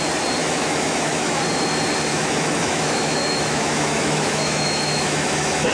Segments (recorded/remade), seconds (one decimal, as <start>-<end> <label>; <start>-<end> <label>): 0.0-0.4 recorded; 0.4-1.4 remade; 1.4-2.1 recorded; 2.1-5.7 remade